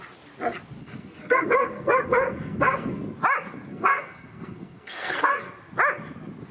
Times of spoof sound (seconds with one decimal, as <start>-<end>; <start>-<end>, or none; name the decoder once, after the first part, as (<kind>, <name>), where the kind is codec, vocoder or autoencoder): 0.8-3.0 (codec, SNAC); 3.7-5.5